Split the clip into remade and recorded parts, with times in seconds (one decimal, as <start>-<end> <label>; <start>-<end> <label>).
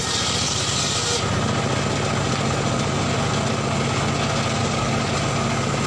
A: 0.0-4.6 recorded; 4.6-5.1 remade; 5.1-5.9 recorded